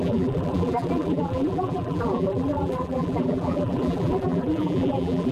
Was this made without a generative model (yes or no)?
no